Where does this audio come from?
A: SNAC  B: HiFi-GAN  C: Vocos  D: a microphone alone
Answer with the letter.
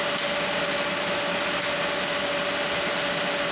D